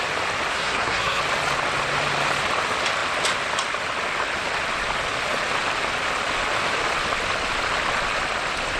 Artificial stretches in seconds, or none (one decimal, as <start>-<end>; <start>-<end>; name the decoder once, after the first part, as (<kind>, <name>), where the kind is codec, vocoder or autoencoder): 0.5-1.2 (codec, SNAC)